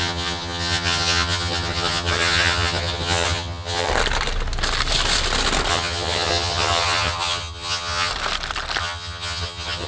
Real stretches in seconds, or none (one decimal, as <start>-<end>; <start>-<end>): 3.9-5.7; 8.1-8.8